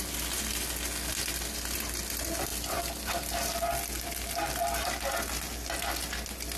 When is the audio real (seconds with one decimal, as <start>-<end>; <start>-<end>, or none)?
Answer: 0.0-2.5; 3.1-6.6